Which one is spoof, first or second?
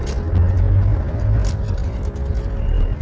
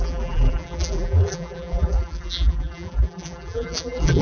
second